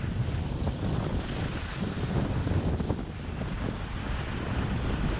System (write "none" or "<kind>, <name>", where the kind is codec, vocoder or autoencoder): vocoder, BigVGAN v2